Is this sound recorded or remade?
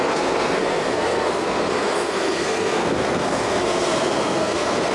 remade